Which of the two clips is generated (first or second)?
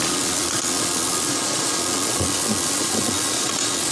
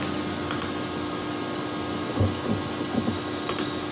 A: first